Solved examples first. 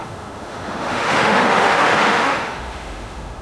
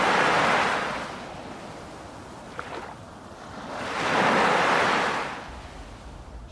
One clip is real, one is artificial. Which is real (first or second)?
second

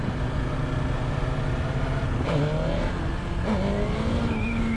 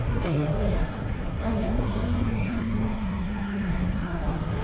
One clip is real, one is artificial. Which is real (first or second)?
first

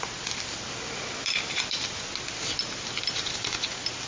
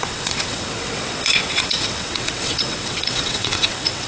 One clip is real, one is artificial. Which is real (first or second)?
first